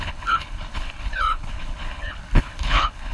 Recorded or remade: remade